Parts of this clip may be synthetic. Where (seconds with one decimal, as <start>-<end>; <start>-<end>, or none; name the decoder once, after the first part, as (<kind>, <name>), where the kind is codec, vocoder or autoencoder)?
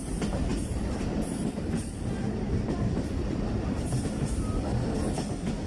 0.5-3.9 (vocoder, BigVGAN v2)